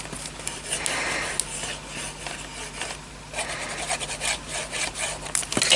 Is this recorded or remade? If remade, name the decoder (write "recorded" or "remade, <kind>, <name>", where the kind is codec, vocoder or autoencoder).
recorded